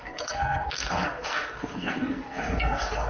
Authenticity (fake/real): fake